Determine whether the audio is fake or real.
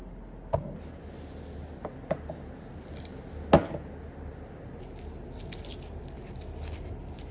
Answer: real